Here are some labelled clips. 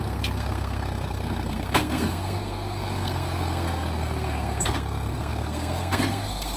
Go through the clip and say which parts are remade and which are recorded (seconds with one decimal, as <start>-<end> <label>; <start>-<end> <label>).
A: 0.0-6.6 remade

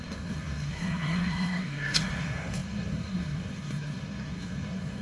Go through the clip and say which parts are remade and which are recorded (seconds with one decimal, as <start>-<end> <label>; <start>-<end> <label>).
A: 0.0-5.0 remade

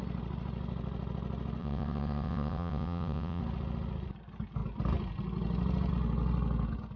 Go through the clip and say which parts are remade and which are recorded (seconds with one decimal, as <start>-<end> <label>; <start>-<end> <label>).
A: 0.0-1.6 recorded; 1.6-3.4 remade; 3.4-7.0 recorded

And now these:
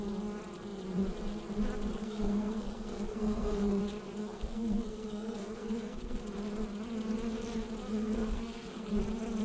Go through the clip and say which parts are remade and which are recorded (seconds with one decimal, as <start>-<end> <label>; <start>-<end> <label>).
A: 0.0-1.9 recorded; 1.9-3.8 remade; 3.8-4.2 recorded; 4.2-6.2 remade; 6.2-7.9 recorded; 7.9-8.9 remade; 8.9-9.4 recorded

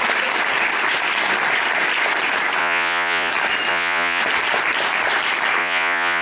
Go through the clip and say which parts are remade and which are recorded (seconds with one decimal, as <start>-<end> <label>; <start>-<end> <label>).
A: 0.0-2.6 recorded; 2.6-3.3 remade; 3.3-3.7 recorded; 3.7-4.2 remade; 4.2-5.6 recorded; 5.6-6.2 remade